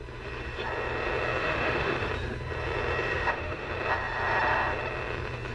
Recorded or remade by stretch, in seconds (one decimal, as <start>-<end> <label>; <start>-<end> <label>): 0.0-1.4 recorded; 1.4-2.1 remade; 2.1-3.1 recorded; 3.1-3.7 remade; 3.7-5.5 recorded